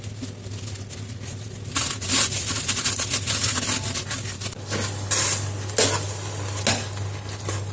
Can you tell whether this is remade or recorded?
recorded